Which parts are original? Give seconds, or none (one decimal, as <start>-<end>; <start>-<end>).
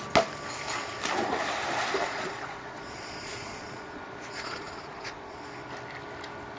0.0-2.0; 5.4-6.6